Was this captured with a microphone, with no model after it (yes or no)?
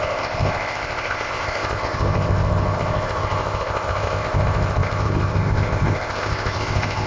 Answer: no